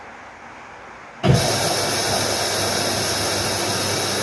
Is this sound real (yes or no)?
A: yes